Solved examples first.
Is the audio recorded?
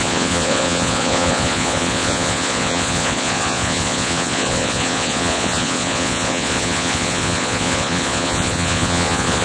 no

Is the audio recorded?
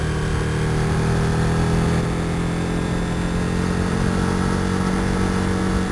yes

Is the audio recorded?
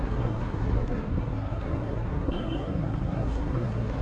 no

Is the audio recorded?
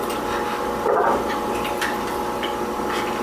yes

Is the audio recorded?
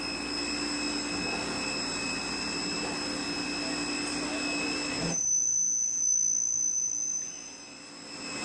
yes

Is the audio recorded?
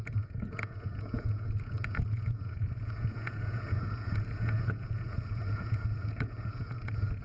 no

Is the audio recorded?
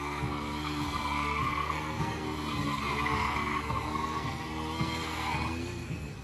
no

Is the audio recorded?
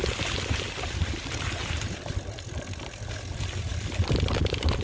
yes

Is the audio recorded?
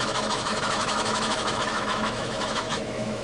no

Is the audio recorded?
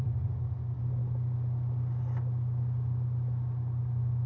yes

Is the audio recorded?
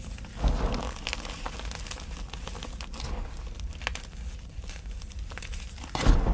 yes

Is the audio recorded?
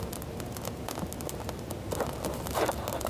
yes